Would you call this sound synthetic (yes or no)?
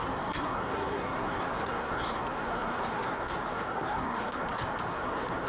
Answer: yes